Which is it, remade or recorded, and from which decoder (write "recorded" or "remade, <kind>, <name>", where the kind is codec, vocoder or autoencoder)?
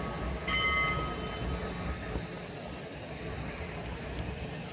recorded